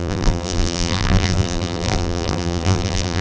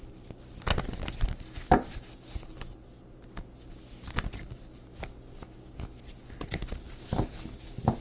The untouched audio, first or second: second